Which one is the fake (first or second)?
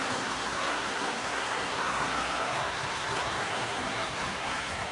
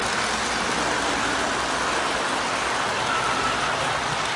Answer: first